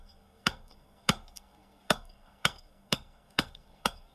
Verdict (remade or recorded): remade